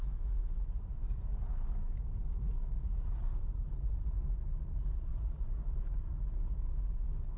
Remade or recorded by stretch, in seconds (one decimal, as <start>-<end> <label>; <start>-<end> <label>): 0.0-0.4 recorded; 0.4-1.2 remade; 1.2-2.8 recorded; 2.8-3.9 remade; 3.9-5.1 recorded; 5.1-6.4 remade; 6.4-7.4 recorded